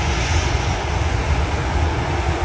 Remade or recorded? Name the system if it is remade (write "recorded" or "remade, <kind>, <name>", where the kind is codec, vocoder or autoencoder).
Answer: remade, vocoder, Vocos